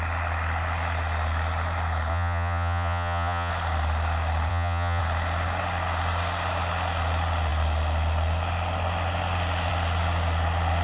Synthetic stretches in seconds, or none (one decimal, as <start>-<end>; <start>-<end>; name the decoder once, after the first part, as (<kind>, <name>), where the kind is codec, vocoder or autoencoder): 2.1-3.5 (vocoder, Vocos); 4.5-5.0